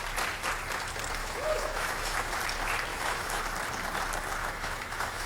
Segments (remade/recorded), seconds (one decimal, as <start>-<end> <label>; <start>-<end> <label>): 0.0-1.2 recorded; 1.2-2.3 remade; 2.3-2.9 recorded; 2.9-3.4 remade; 3.4-4.4 recorded; 4.4-5.3 remade